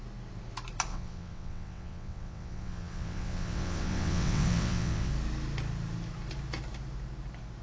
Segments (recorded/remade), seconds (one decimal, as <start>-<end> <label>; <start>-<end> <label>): 0.0-0.9 recorded; 0.9-5.1 remade; 5.1-7.6 recorded